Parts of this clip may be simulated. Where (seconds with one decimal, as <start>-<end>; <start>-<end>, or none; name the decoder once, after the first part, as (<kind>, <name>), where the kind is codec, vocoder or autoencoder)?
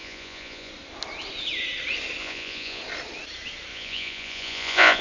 0.0-0.7 (vocoder, Vocos); 2.2-2.8; 3.7-5.0